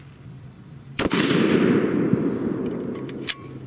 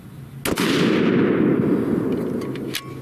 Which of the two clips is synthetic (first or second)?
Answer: first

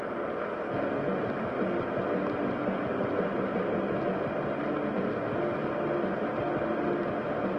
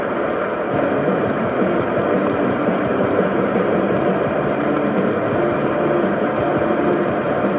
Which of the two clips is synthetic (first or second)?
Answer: second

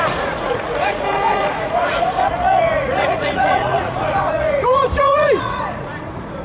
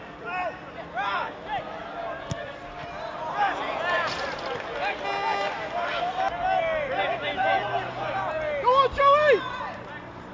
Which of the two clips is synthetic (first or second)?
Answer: first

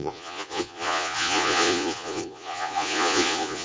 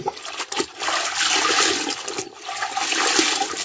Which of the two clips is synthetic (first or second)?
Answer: first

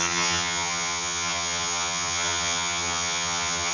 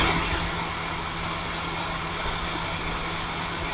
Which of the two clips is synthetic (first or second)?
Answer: first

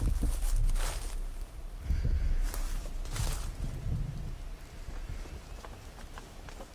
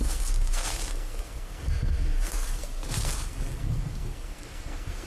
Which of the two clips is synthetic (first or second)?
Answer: second